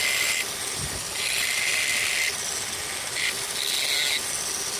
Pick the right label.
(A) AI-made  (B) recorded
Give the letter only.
B